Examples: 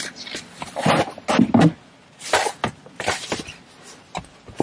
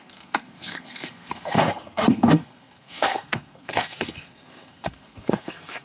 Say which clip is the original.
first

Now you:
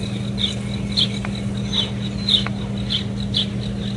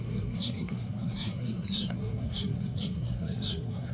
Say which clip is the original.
first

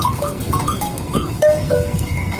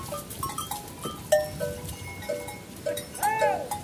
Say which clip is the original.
second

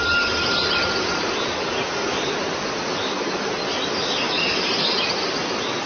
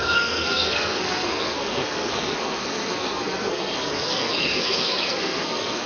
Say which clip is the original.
first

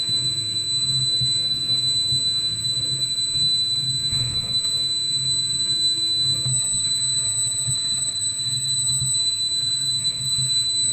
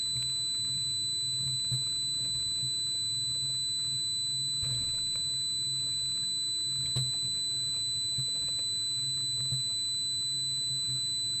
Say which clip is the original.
second